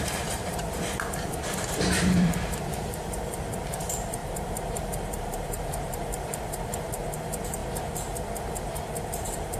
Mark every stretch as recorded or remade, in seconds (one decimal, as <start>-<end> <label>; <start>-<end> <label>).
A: 0.0-7.6 remade; 7.6-9.1 recorded; 9.1-9.6 remade